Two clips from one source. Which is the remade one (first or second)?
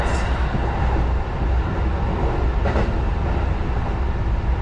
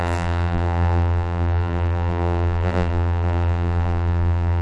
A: second